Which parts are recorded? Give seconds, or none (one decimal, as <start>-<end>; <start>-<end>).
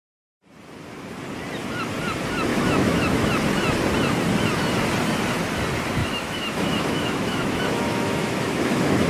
0.0-2.5; 3.3-6.0